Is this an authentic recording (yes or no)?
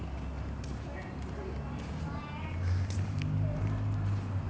yes